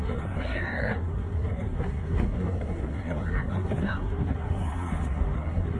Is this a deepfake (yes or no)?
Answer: yes